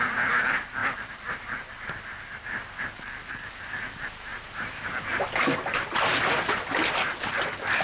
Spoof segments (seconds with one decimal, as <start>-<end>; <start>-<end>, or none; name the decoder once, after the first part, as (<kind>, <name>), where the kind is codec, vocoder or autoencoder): none

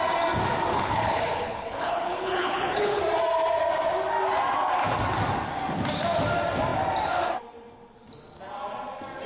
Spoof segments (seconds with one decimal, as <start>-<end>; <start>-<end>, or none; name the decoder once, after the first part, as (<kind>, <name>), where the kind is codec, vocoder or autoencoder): 0.7-3.0 (codec, HILCodec)

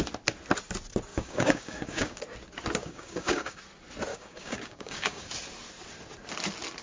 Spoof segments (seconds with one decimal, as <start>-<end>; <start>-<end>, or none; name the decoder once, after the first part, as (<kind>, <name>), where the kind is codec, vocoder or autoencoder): 1.1-2.2 (codec, DAC); 2.8-3.6; 4.1-5.3

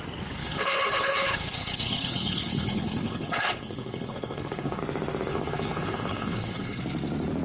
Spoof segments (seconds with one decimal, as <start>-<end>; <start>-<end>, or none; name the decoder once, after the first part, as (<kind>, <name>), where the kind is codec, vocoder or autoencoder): 0.4-4.8 (codec, HILCodec); 5.3-6.8

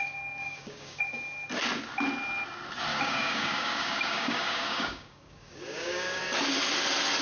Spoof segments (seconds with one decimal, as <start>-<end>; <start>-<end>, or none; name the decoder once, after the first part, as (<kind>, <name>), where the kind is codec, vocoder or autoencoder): 0.4-1.0 (codec, DAC); 2.9-6.2

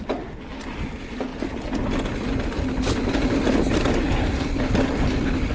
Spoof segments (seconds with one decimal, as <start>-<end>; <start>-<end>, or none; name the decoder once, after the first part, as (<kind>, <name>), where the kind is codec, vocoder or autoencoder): none

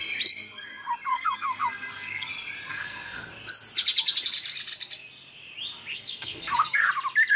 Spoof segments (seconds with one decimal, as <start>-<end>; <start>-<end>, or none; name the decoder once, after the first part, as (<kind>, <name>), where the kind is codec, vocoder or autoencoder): 1.1-2.3 (codec, SNAC); 2.7-3.3; 5.9-6.9

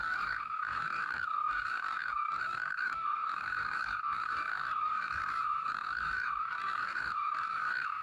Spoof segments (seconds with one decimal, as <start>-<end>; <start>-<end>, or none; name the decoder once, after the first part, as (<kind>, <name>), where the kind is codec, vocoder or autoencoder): 0.0-8.0 (codec, DAC)